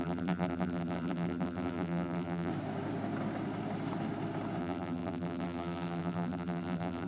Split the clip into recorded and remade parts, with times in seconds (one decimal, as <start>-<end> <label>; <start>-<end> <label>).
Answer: 0.0-2.5 remade; 2.5-4.6 recorded; 4.6-7.1 remade